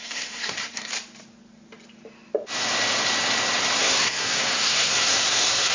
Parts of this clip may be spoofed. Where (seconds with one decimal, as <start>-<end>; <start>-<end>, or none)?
0.0-0.9; 3.8-5.7